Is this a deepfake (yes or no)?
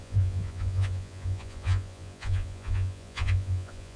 yes